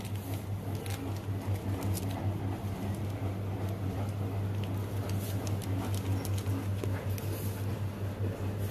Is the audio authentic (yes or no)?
yes